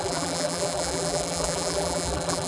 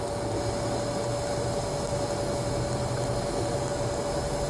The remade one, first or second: first